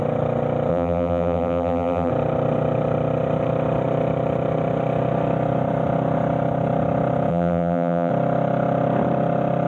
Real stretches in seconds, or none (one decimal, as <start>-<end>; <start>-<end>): 0.0-0.7; 2.1-7.3; 8.1-9.7